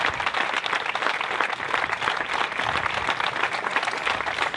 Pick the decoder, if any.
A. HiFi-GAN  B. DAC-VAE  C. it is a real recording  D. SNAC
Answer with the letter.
C